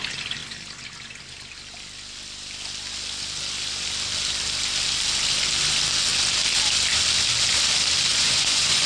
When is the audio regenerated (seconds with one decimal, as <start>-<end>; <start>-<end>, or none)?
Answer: 8.1-8.9

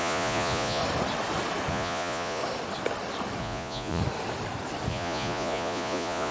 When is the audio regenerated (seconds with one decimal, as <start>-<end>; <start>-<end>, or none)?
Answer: 0.0-0.8; 1.7-2.4; 3.4-4.0; 4.9-6.3

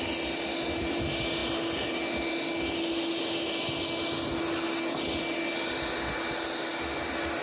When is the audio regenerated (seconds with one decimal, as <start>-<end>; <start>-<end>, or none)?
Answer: none